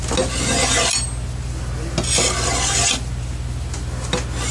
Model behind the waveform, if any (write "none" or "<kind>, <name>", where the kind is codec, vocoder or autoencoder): none